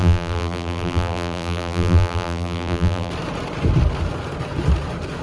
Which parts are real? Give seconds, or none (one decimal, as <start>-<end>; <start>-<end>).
3.1-5.2